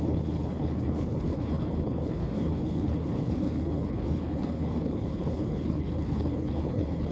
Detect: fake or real fake